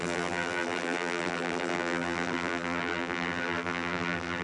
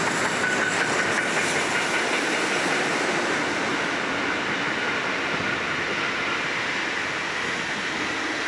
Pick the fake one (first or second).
first